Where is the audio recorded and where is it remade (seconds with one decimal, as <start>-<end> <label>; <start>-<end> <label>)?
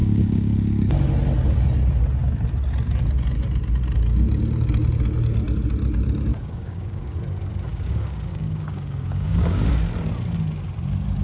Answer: 0.0-0.9 remade; 0.9-6.3 recorded; 6.3-7.2 remade; 7.2-7.7 recorded; 7.7-9.7 remade; 9.7-11.2 recorded